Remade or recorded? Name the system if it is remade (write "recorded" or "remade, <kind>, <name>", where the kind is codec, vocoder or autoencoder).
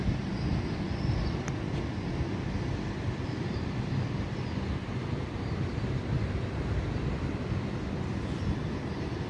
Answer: remade, vocoder, BigVGAN v2